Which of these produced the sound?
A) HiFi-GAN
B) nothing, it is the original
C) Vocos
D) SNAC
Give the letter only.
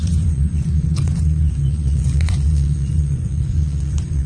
C